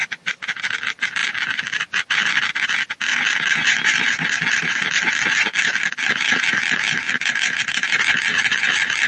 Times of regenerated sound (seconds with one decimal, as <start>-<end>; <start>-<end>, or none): none